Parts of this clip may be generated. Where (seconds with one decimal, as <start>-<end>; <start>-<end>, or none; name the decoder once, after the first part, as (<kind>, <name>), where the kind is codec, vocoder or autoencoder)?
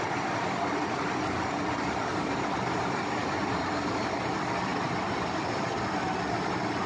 none